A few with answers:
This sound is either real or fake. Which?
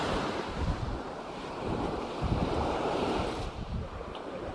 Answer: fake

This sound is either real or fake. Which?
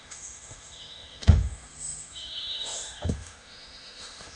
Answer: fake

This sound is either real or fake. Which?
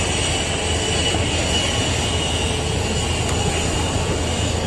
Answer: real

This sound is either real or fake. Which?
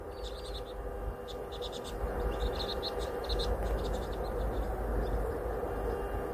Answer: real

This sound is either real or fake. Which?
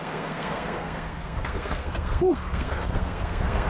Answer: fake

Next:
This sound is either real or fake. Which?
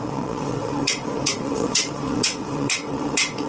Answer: fake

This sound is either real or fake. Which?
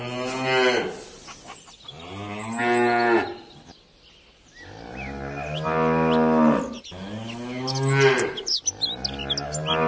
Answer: real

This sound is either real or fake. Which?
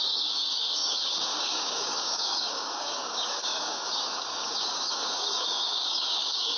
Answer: fake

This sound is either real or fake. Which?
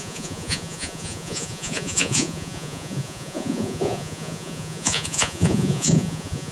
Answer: fake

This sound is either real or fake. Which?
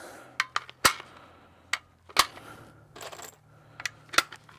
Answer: real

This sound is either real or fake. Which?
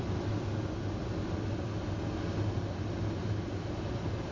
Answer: real